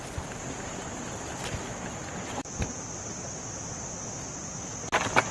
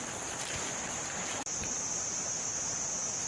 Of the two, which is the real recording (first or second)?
first